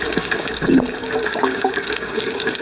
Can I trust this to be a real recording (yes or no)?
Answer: no